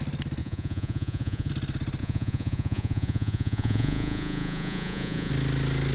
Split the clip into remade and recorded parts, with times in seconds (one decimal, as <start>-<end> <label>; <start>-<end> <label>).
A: 0.0-0.4 recorded; 0.4-1.5 remade; 1.5-2.0 recorded; 2.0-5.3 remade; 5.3-5.9 recorded